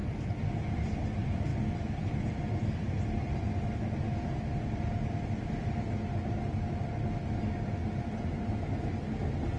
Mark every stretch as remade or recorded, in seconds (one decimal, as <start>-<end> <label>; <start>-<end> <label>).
0.0-9.6 recorded